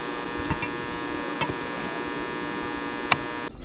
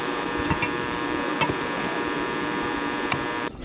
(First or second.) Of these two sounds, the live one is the first